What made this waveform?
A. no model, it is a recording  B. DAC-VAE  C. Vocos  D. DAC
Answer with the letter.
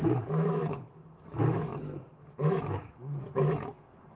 B